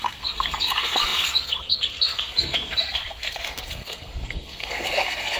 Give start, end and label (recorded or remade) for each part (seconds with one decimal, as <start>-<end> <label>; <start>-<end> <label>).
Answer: 0.0-5.4 remade